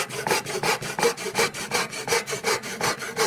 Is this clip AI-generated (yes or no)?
no